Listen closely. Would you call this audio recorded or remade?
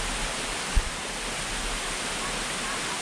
recorded